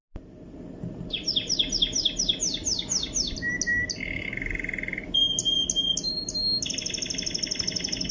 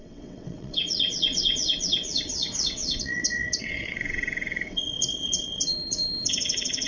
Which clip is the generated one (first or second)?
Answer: second